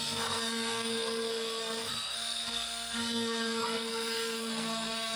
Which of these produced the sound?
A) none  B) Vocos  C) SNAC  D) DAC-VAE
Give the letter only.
C